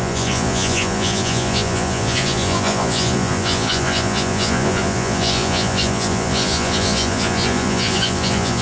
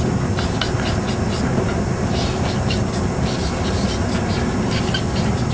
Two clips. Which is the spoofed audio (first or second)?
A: first